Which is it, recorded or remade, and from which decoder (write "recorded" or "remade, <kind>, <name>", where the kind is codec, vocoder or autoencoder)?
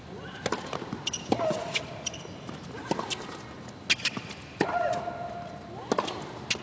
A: recorded